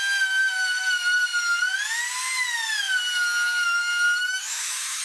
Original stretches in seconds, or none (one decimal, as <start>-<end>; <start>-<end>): 0.0-4.2